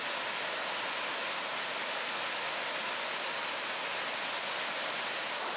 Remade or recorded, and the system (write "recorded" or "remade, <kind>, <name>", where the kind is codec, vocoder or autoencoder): recorded